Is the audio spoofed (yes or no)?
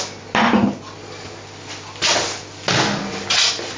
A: no